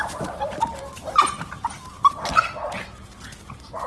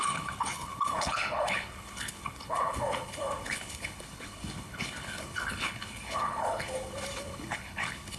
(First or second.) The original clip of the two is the first